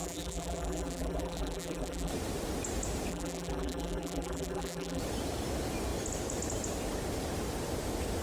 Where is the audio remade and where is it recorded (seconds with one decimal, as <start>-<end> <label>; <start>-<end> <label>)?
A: 0.0-2.1 remade; 2.1-3.1 recorded; 3.1-5.0 remade; 5.0-8.2 recorded